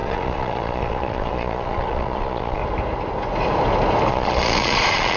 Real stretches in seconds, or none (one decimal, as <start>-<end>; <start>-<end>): 2.6-4.1